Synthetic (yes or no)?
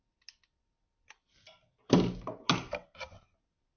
no